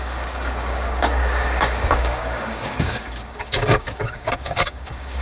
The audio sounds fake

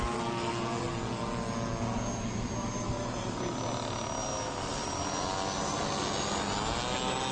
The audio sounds real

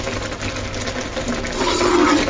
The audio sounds real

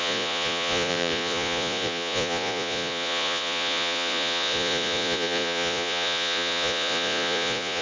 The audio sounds fake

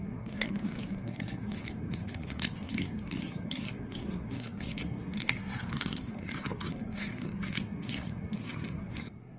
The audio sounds fake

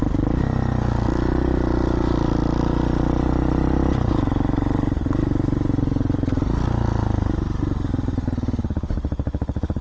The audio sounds real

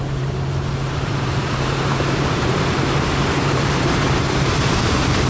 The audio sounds fake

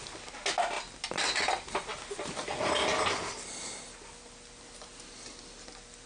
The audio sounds real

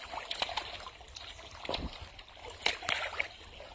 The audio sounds real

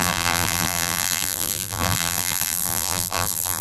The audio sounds fake